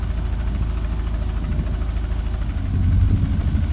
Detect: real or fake real